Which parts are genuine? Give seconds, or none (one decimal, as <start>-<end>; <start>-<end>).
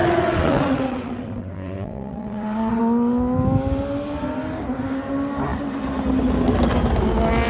2.8-7.5